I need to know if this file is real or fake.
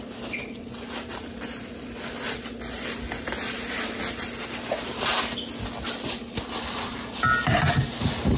real